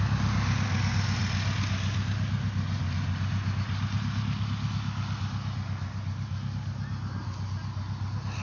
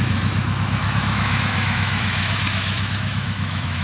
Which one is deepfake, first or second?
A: second